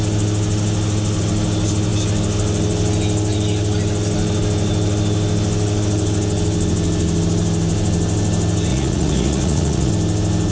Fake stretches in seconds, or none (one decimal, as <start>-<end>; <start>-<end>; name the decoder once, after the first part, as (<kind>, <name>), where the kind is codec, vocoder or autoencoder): 8.7-9.9 (vocoder, Vocos)